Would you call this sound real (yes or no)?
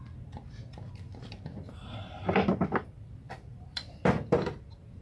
no